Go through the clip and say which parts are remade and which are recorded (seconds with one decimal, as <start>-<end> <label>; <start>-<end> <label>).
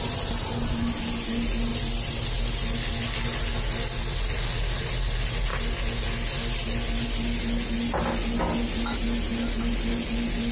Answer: 0.0-10.5 recorded